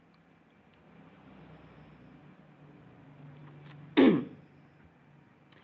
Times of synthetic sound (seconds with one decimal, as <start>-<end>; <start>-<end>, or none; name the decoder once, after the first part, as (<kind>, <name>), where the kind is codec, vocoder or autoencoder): none